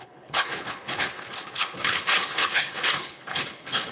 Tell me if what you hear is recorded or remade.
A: remade